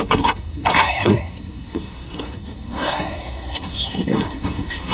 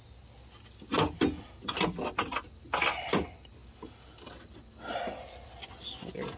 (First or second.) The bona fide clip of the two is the second